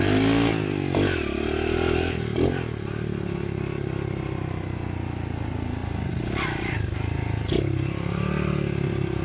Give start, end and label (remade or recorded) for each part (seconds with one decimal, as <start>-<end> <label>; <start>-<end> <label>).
0.0-9.2 recorded